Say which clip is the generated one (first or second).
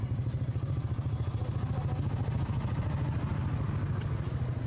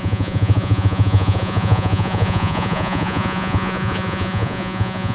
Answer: second